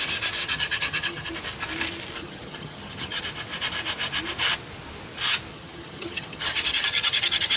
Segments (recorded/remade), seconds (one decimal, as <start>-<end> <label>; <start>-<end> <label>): 0.0-0.4 recorded; 0.4-1.3 remade; 1.3-2.2 recorded; 2.2-3.2 remade; 3.2-5.5 recorded; 5.5-7.6 remade